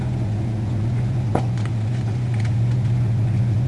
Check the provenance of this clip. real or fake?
fake